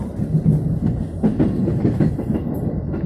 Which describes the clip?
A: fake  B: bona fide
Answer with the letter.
B